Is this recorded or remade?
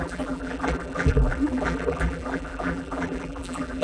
remade